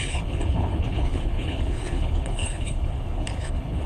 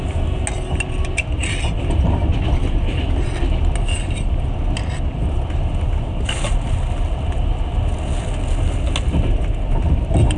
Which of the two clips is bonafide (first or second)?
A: second